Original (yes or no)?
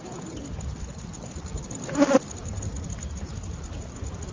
yes